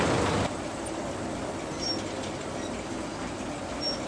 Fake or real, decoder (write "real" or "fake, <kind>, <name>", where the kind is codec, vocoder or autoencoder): real